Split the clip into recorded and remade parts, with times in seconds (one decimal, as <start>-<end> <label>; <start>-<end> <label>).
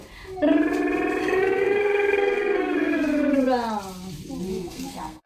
0.0-1.2 recorded; 1.2-3.4 remade; 3.4-4.5 recorded; 4.5-5.3 remade